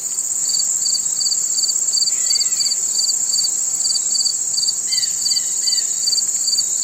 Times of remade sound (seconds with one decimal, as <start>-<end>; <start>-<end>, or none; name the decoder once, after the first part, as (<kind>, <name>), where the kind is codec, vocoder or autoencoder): 0.0-0.9 (vocoder, BigVGAN v2)